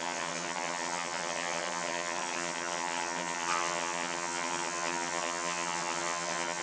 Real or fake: fake